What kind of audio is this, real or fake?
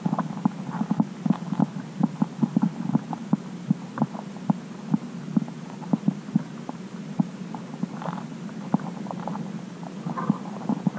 real